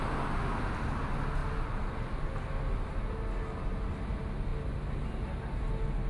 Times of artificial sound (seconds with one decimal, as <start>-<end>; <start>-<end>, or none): none